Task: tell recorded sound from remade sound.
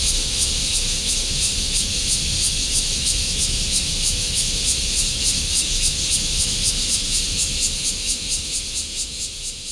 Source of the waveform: remade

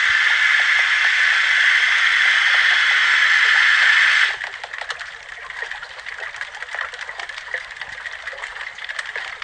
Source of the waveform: recorded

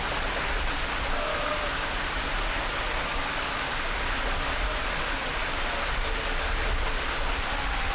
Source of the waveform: recorded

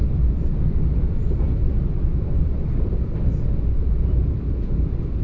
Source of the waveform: recorded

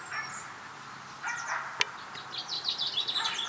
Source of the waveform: recorded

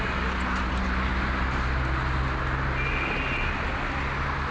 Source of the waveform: recorded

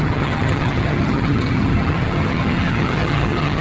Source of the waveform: remade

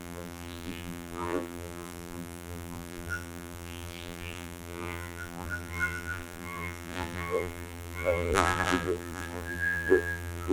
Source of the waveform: remade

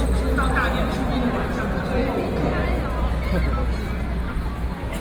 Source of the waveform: recorded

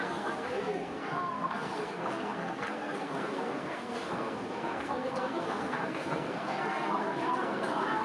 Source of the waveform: remade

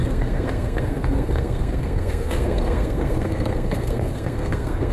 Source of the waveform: remade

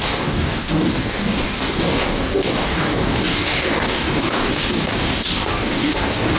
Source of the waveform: remade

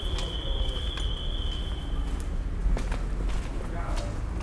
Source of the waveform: recorded